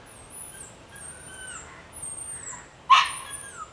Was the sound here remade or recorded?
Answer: recorded